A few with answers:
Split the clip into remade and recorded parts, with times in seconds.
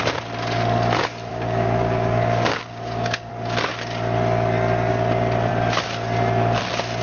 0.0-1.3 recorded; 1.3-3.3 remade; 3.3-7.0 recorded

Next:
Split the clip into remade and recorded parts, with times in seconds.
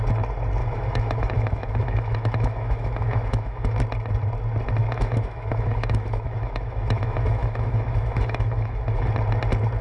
0.0-0.6 recorded; 0.6-3.8 remade; 3.8-4.8 recorded; 4.8-9.1 remade; 9.1-9.8 recorded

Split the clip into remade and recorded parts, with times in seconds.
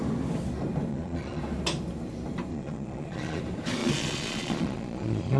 0.0-0.9 recorded; 0.9-1.4 remade; 1.4-2.5 recorded; 2.5-3.4 remade; 3.4-3.8 recorded; 3.8-5.4 remade